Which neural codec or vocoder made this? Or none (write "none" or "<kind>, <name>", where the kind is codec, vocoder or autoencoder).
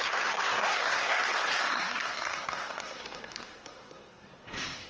codec, SNAC